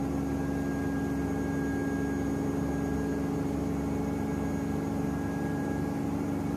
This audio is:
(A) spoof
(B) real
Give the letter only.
B